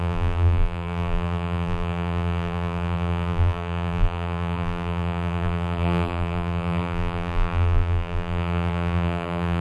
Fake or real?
fake